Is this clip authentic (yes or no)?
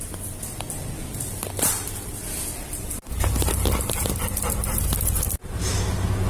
yes